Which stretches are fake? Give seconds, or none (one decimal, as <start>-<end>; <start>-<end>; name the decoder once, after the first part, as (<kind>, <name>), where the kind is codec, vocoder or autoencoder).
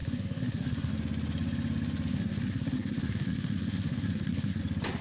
0.0-0.9 (codec, SNAC); 2.1-4.6